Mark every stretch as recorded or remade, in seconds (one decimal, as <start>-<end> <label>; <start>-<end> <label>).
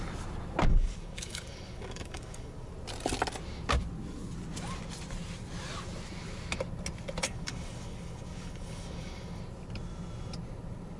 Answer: 0.0-0.7 recorded; 0.7-2.7 remade; 2.7-7.2 recorded; 7.2-9.4 remade; 9.4-11.0 recorded